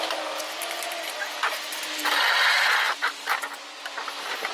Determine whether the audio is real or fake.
real